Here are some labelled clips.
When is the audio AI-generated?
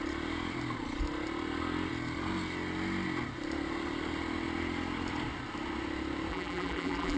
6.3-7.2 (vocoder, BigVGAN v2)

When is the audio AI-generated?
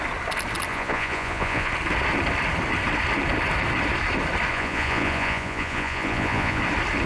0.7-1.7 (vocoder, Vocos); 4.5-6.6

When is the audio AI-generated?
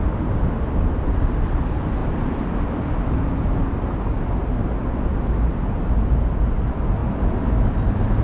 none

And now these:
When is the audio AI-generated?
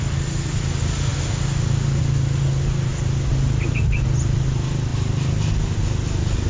none